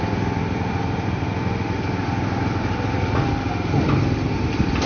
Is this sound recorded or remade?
recorded